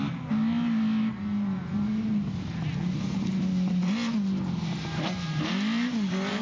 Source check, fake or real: real